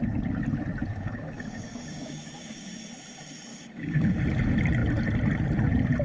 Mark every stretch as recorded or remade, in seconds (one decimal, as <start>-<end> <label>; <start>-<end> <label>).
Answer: 0.0-0.9 recorded; 0.9-2.9 remade; 2.9-3.5 recorded; 3.5-4.1 remade; 4.1-6.0 recorded